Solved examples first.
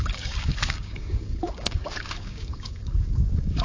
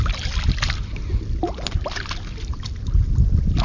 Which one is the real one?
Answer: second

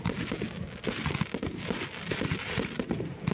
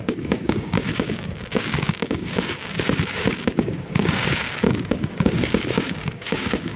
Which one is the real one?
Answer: first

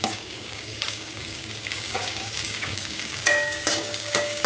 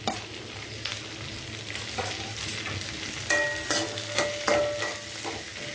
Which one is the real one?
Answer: second